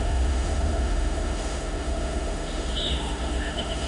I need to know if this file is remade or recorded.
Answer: remade